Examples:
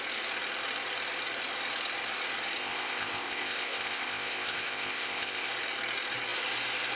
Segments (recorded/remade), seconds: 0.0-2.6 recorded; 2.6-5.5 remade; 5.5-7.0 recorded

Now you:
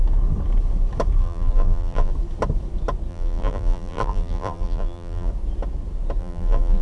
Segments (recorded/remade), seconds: 0.0-1.2 recorded; 1.2-2.1 remade; 2.1-3.1 recorded; 3.1-5.3 remade; 5.3-6.2 recorded; 6.2-6.8 remade

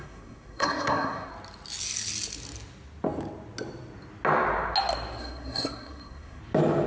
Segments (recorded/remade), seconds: 0.0-1.3 remade; 1.3-5.2 recorded; 5.2-6.4 remade; 6.4-6.9 recorded